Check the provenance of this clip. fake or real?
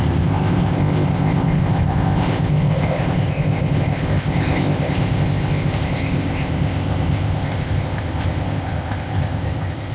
fake